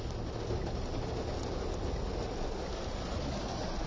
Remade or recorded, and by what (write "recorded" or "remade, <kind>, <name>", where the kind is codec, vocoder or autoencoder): recorded